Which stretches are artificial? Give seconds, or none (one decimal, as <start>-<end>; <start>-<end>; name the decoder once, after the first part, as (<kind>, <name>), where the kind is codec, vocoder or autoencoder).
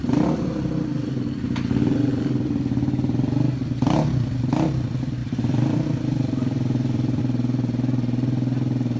2.1-2.6 (vocoder, BigVGAN v2); 5.2-7.2